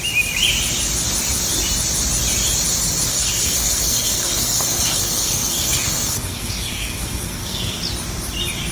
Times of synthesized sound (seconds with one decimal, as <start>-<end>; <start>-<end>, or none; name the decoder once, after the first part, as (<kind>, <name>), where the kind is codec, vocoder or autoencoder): 3.1-7.8 (codec, SNAC)